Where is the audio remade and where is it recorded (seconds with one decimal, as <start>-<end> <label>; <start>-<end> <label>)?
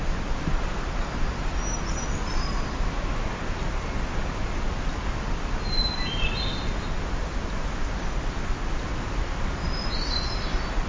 0.0-0.7 recorded; 0.7-1.6 remade; 1.6-10.9 recorded